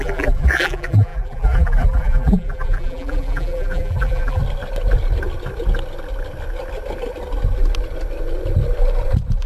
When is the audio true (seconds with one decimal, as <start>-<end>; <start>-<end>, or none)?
4.4-9.5